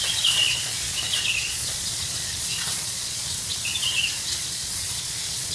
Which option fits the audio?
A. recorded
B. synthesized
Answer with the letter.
B